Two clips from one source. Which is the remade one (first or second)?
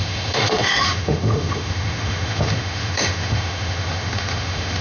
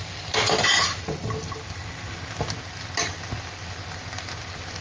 first